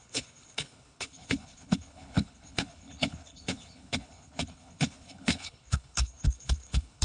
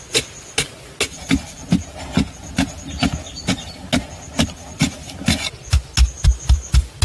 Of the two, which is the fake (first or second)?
first